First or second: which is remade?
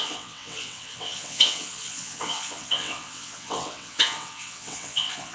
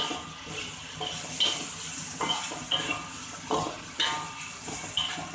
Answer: first